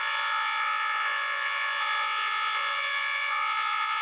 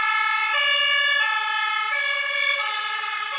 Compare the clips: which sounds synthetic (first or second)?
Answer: first